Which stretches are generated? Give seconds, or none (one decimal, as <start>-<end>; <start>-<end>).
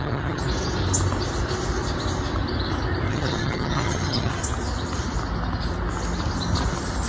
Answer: 0.0-0.4; 3.1-4.4